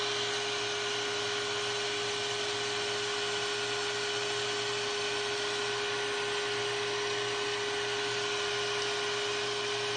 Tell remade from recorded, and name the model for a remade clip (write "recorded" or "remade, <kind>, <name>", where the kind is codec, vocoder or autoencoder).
recorded